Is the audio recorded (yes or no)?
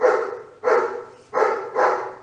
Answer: yes